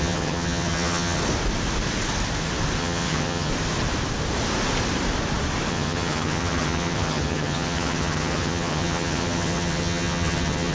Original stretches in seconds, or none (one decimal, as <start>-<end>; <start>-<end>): 1.2-2.8; 3.5-5.7